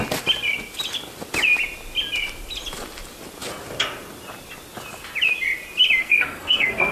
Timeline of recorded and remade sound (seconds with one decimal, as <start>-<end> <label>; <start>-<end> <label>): 0.0-6.0 recorded; 6.0-6.9 remade